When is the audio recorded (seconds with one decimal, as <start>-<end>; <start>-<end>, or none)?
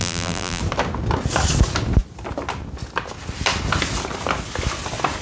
0.6-5.2